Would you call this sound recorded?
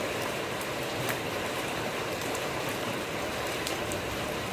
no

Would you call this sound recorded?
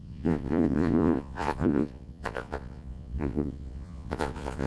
no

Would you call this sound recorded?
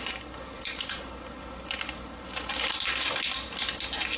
yes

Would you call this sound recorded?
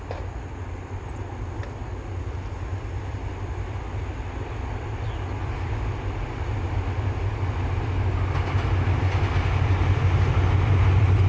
yes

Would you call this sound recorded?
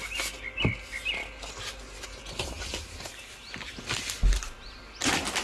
yes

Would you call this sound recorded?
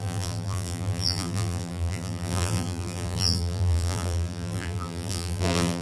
no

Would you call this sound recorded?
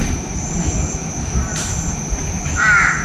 yes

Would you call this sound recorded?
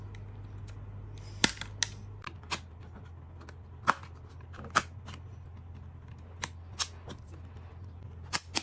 yes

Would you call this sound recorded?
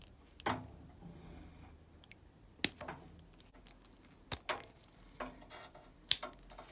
yes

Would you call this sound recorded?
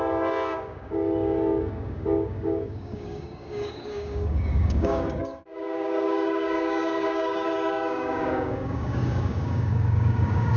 no